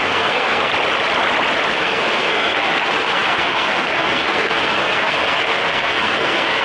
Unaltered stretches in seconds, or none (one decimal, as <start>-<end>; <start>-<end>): 0.7-1.7